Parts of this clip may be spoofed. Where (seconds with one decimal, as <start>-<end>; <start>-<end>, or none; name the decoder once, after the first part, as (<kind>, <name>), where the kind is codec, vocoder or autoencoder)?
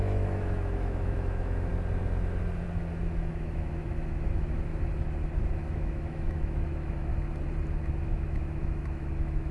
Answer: 0.0-1.7 (autoencoder, DAC-VAE); 3.3-4.7; 5.5-7.1; 8.0-9.5